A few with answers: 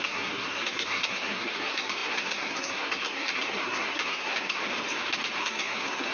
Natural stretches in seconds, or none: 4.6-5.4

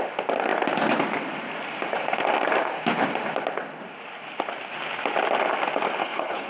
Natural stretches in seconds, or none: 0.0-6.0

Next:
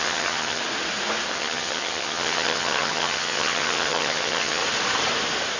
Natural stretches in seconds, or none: 0.6-1.3; 4.6-5.6

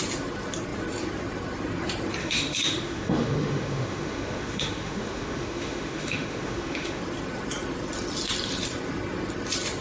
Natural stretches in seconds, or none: 0.0-2.2; 7.0-9.8

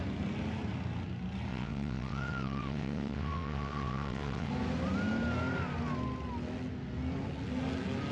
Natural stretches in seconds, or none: 0.0-1.5; 4.5-8.1

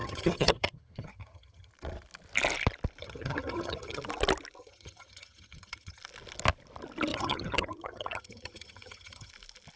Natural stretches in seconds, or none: 1.7-3.0; 4.0-4.6; 6.0-7.1; 9.3-9.8

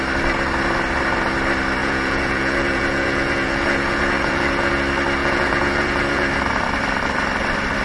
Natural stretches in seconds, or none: 0.0-1.8; 4.7-5.2; 6.3-7.8

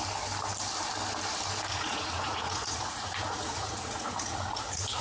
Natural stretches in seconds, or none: 0.0-1.7